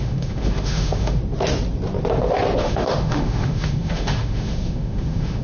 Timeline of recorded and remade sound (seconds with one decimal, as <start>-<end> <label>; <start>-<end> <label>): 0.0-1.2 remade; 1.2-2.6 recorded; 2.6-5.4 remade